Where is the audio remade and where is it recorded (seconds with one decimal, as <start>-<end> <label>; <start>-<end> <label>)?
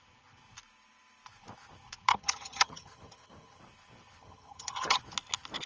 0.0-2.1 recorded; 2.1-3.6 remade; 3.6-4.2 recorded; 4.2-5.0 remade; 5.0-5.7 recorded